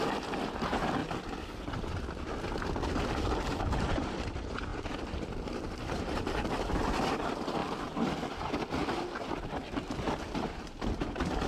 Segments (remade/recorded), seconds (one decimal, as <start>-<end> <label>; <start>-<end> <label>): 0.0-4.7 recorded; 4.7-6.2 remade; 6.2-8.8 recorded; 8.8-9.4 remade; 9.4-11.5 recorded